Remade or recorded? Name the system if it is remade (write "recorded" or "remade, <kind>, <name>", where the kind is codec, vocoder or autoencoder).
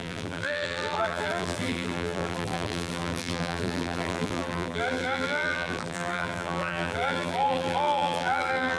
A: remade, vocoder, BigVGAN v2